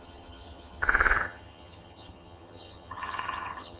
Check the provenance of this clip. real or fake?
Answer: fake